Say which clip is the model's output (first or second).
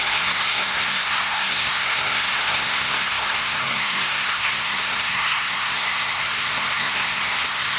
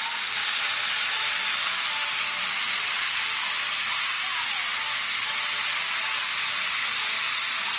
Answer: first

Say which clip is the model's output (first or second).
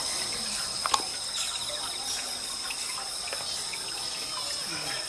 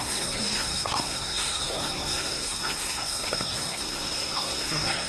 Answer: second